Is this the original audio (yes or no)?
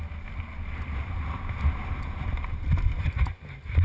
yes